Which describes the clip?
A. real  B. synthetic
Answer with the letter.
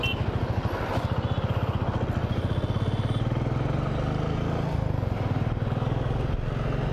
A